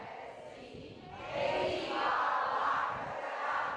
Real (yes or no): yes